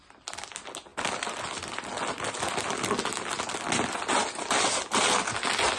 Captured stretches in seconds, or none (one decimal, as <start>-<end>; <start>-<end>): 0.0-5.8